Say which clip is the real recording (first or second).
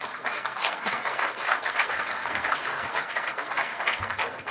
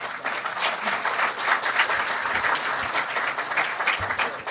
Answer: second